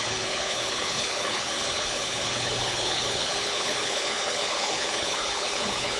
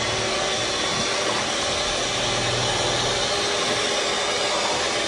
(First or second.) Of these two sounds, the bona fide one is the second